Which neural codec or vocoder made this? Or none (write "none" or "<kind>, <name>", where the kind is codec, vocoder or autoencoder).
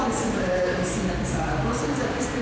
none